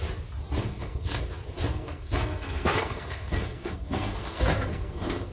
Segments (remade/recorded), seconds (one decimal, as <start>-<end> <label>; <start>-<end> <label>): 0.0-0.6 recorded; 0.6-1.2 remade; 1.2-1.7 recorded; 1.7-5.3 remade